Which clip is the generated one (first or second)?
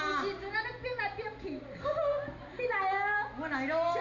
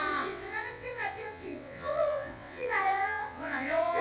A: second